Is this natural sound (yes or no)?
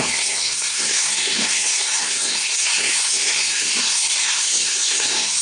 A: no